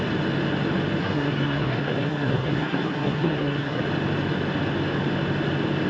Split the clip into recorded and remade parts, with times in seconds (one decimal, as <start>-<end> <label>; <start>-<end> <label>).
0.0-1.0 recorded; 1.0-3.8 remade; 3.8-5.9 recorded